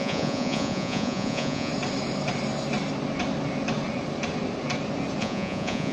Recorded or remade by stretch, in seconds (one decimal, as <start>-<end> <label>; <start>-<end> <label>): 0.0-1.7 remade; 1.7-5.2 recorded; 5.2-5.9 remade